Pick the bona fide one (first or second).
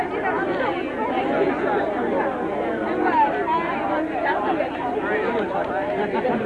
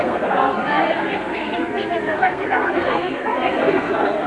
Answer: first